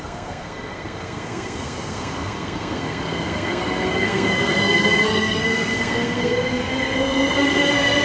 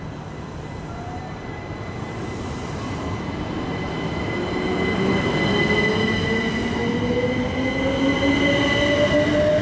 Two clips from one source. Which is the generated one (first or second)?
first